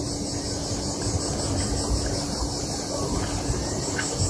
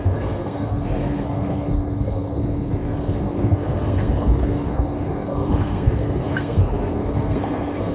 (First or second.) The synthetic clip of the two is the second